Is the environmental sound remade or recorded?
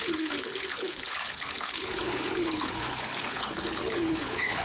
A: remade